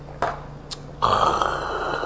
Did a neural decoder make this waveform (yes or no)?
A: no